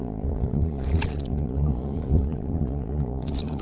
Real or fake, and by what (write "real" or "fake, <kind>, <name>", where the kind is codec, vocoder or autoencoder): fake, vocoder, Vocos